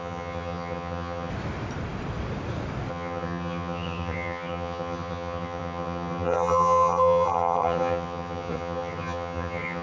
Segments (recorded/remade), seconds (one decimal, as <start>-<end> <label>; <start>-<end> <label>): 0.0-1.3 remade; 1.3-2.9 recorded; 2.9-9.8 remade